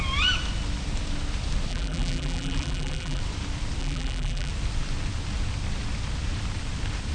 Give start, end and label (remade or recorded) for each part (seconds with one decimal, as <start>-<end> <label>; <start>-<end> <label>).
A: 0.0-1.7 recorded; 1.7-3.2 remade; 3.2-3.8 recorded; 3.8-4.5 remade; 4.5-7.1 recorded